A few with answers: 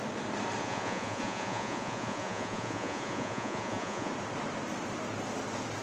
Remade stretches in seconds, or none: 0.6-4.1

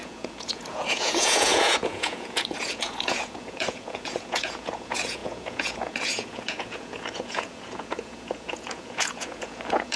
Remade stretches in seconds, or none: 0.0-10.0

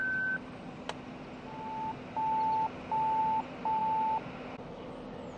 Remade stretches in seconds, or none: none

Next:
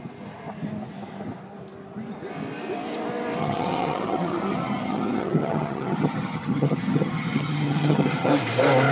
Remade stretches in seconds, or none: 3.4-8.3